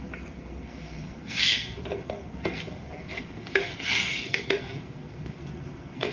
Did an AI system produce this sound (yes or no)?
yes